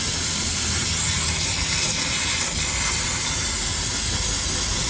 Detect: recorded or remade recorded